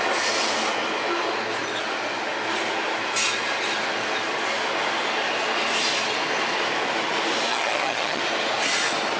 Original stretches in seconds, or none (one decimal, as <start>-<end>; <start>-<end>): 0.0-7.5; 8.2-9.2

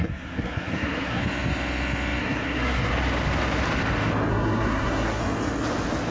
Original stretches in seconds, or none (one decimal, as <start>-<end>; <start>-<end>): 1.2-2.2; 2.9-4.3; 5.2-6.1

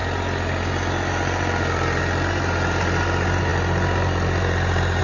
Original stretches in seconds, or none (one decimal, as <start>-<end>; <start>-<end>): 0.0-5.0

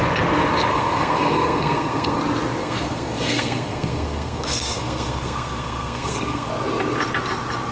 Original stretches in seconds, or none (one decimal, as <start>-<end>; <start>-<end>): 0.0-0.7; 2.2-2.6; 6.5-7.7

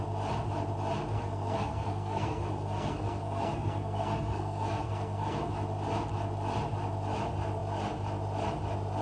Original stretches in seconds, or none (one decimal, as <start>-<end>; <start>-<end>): 0.0-1.1; 5.5-9.0

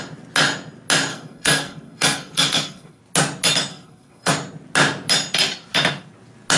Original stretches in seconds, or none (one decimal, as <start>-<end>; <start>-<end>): 0.0-1.1; 3.0-3.7; 4.3-6.6